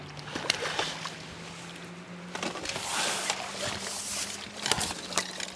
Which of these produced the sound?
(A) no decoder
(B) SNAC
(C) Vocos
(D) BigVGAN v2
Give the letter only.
A